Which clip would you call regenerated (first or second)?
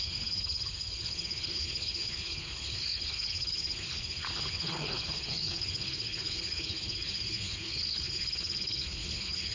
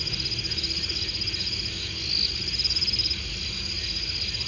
first